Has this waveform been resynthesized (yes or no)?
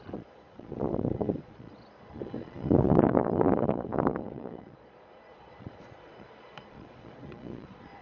yes